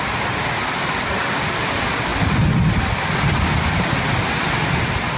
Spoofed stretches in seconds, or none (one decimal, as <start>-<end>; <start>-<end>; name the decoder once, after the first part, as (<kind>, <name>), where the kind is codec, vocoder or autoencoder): none